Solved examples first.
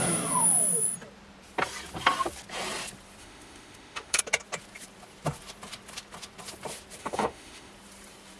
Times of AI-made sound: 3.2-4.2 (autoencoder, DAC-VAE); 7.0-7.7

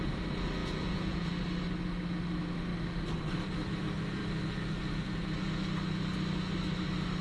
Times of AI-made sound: 0.6-1.3 (vocoder, Vocos)

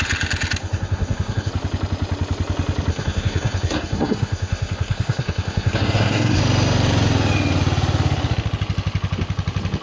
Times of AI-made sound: 0.6-1.5 (codec, SNAC); 2.9-6.4

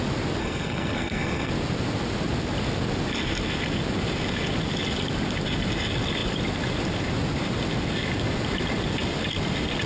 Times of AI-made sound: 0.4-1.5 (codec, SNAC)

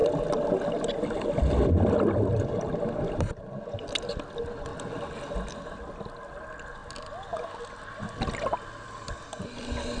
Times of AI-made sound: none

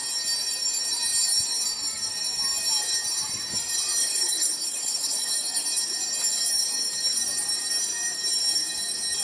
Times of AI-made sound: 4.0-5.3 (codec, HILCodec)

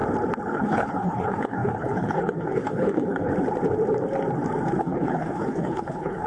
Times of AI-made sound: 0.5-3.3 (codec, HILCodec); 4.8-6.3

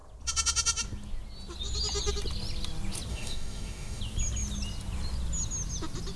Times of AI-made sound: 3.1-4.0 (autoencoder, DAC-VAE)